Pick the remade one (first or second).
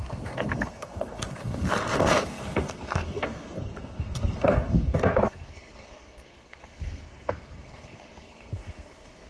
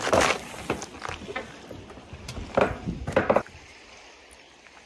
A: first